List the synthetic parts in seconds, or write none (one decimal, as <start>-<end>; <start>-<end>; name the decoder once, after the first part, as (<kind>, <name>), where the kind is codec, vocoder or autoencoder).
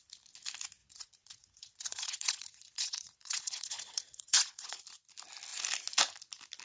0.8-4.8 (vocoder, Vocos)